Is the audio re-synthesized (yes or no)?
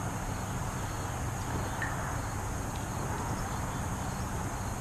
no